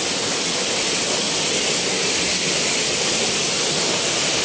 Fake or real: real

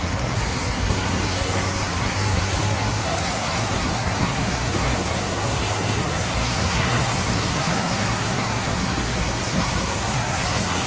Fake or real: fake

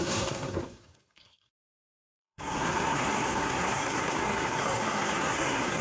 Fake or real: fake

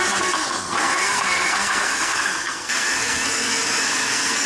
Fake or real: fake